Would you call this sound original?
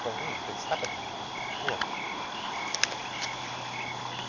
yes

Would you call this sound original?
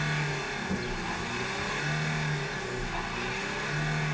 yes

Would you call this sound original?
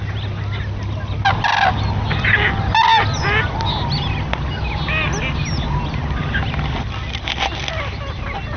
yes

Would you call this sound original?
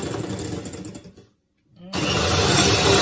yes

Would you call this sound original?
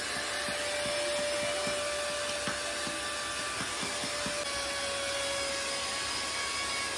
yes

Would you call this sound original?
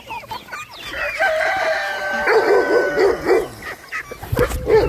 yes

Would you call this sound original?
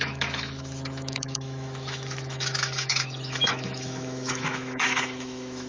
no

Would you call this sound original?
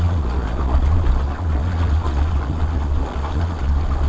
no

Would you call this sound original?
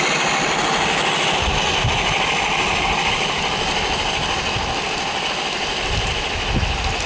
yes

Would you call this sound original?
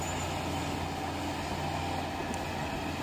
yes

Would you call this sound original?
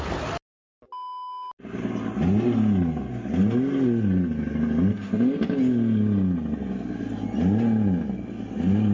yes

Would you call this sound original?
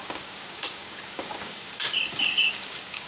no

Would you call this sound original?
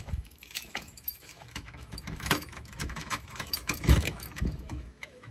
no